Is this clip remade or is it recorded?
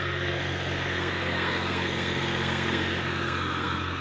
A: remade